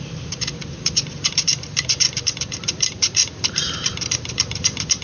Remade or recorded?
remade